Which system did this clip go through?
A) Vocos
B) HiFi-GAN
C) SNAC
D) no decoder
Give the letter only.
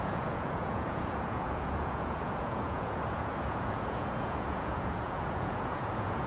A